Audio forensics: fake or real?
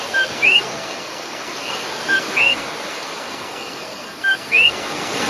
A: fake